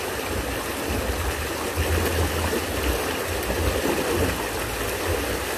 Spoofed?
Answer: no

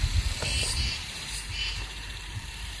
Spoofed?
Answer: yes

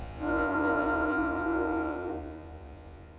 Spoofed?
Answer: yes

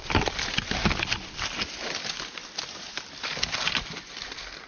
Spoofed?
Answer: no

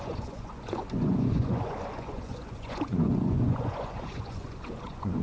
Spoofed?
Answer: yes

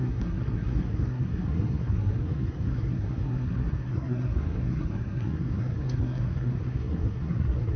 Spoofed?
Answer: yes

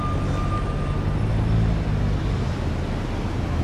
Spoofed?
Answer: no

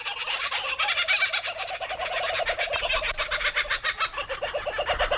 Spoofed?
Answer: no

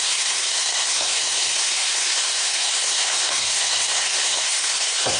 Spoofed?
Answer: yes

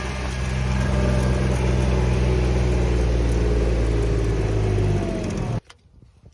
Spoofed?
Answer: no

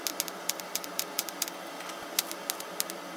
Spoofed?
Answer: no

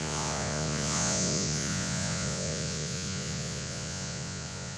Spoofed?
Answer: yes